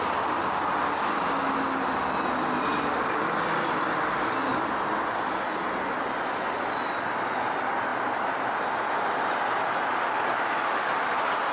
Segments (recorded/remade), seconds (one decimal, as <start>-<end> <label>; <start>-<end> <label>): 0.0-11.5 recorded